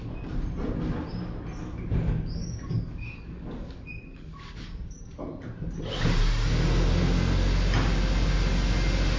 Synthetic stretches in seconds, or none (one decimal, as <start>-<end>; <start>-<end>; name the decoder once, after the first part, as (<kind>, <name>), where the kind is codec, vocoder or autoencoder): 2.4-5.2 (codec, DAC)